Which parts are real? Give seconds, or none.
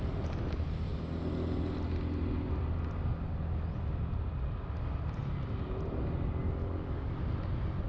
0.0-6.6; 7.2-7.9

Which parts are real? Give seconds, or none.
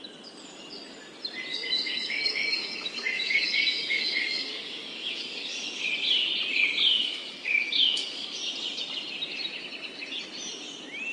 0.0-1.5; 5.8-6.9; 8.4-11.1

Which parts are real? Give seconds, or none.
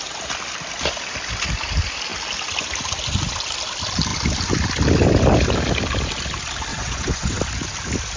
0.0-6.7; 7.4-8.2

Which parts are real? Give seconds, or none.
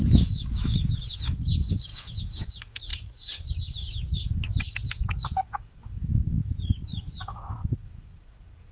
0.0-1.9; 2.5-8.7